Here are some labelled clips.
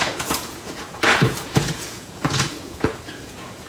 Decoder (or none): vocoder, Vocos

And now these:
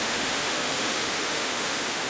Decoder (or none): autoencoder, DAC-VAE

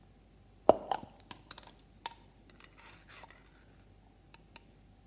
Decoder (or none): none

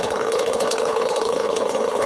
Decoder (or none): codec, HILCodec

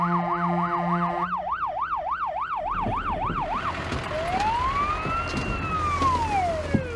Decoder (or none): none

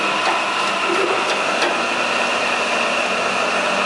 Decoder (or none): none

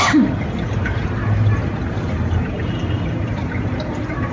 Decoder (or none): none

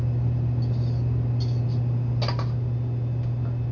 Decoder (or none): none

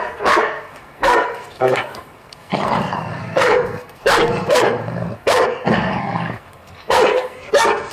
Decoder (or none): codec, SNAC